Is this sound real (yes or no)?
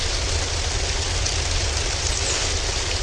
yes